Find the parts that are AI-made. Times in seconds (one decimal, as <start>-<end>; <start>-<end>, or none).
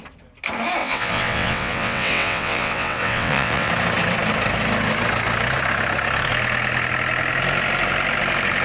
0.8-3.7